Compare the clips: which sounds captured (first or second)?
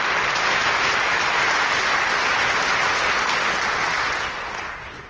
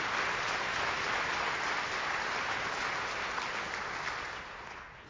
first